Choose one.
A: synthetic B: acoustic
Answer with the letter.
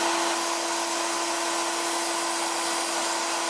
B